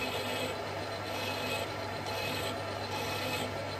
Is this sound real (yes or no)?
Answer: yes